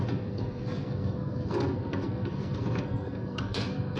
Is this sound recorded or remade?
remade